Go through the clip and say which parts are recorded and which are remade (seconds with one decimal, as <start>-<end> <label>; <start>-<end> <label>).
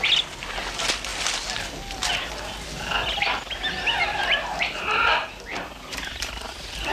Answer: 0.0-4.1 recorded; 4.1-6.5 remade; 6.5-6.9 recorded